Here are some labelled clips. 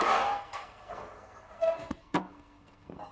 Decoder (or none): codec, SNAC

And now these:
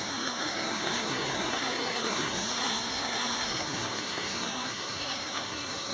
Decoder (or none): codec, SNAC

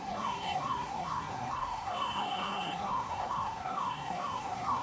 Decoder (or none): codec, SNAC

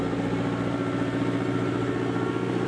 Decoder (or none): none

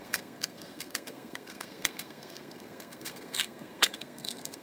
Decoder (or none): codec, SNAC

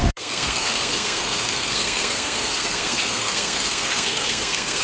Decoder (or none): codec, SNAC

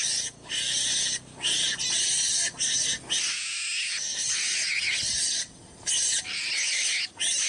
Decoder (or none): none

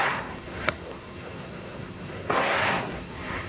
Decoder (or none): codec, SNAC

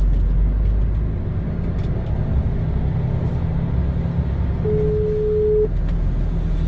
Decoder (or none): none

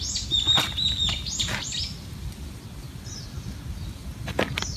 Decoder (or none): none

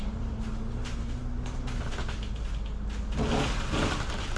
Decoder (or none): none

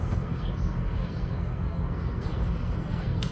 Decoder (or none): codec, SNAC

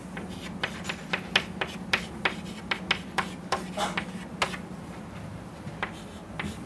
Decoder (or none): none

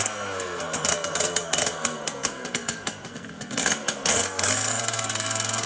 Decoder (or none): codec, SNAC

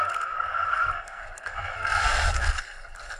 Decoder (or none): codec, SNAC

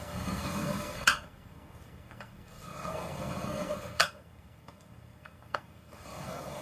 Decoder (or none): codec, SNAC